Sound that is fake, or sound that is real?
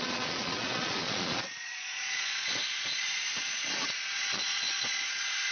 fake